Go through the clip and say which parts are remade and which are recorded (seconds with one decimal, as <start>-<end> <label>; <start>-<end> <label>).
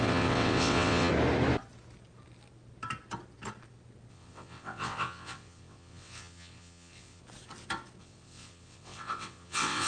0.0-1.1 remade; 1.1-4.1 recorded; 4.1-7.2 remade; 7.2-8.0 recorded; 8.0-9.9 remade